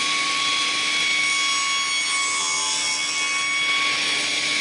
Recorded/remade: recorded